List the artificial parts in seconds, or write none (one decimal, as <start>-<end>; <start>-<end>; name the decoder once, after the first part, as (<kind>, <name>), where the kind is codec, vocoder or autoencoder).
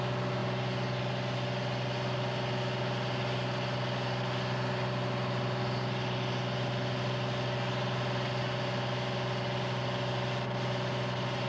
none